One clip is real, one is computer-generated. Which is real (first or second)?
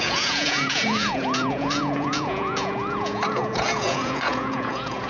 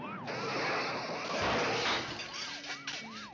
second